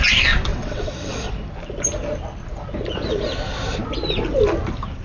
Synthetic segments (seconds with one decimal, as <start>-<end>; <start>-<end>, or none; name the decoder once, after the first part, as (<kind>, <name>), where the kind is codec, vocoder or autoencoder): 0.5-1.3 (vocoder, WaveNeXt)